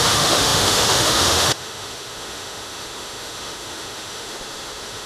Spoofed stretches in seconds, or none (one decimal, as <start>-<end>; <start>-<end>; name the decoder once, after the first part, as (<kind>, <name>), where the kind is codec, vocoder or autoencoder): 0.0-5.1 (autoencoder, DAC-VAE)